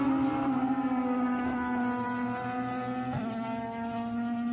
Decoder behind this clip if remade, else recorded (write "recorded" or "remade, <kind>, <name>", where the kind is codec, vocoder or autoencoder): recorded